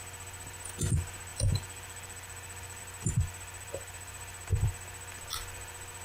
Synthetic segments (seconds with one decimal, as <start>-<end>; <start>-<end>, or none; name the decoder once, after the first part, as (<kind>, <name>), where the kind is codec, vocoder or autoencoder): none